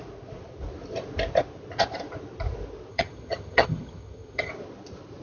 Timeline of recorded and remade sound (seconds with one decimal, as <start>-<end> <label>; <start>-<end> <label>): 0.0-2.9 recorded; 2.9-4.5 remade; 4.5-5.2 recorded